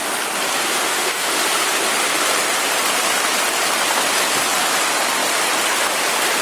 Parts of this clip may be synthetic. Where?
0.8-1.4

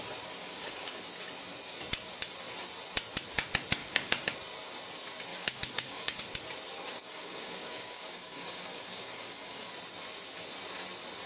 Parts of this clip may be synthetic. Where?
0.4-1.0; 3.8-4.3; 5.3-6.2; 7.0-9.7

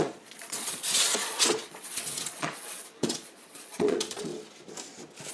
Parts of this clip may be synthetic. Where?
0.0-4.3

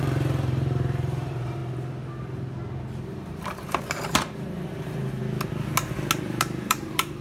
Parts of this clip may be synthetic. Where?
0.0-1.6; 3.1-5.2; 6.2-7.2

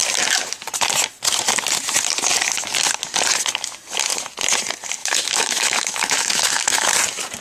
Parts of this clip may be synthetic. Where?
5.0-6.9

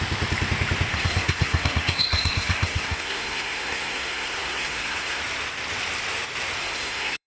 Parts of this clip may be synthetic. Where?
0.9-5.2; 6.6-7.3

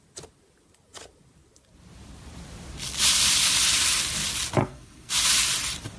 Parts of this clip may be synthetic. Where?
4.6-5.1

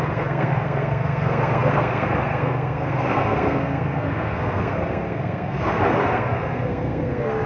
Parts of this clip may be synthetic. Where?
0.0-7.5